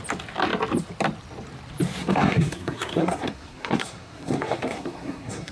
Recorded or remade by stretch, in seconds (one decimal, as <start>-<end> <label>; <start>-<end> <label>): 0.0-2.0 recorded; 2.0-5.5 remade

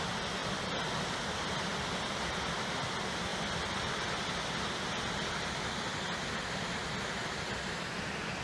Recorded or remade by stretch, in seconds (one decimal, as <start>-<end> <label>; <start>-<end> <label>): 0.0-8.4 recorded

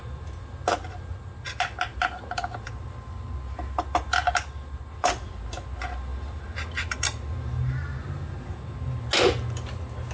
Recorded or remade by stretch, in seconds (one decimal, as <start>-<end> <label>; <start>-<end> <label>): 0.0-10.1 recorded

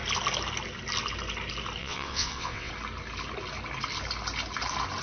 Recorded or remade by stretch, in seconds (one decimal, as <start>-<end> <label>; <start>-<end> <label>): 0.0-1.8 recorded; 1.8-2.7 remade; 2.7-5.0 recorded